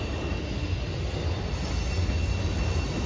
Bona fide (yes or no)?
yes